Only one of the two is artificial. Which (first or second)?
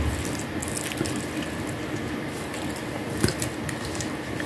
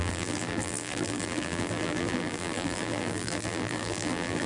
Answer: second